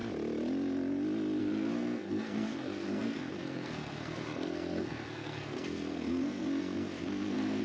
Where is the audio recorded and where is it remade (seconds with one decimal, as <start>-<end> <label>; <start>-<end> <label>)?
0.0-1.4 recorded; 1.4-7.6 remade